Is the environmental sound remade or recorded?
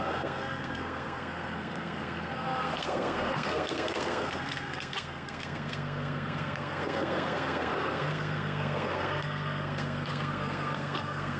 remade